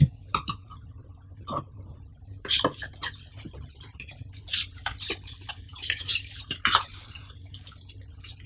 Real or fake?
fake